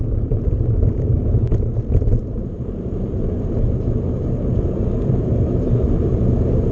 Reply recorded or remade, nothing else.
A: remade